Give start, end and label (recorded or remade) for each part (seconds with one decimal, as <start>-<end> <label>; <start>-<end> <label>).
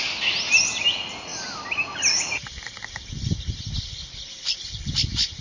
0.0-5.4 recorded